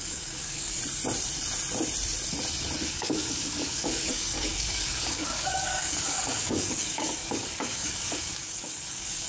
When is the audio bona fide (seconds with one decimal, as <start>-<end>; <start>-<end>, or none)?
0.8-2.9